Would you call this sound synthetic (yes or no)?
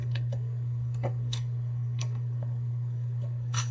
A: yes